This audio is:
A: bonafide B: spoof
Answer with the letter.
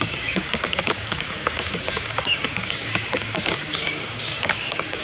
B